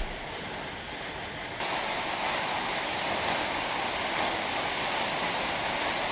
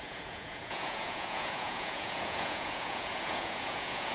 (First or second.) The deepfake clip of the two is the second